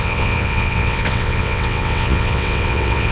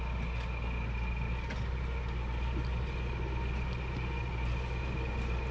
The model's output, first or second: first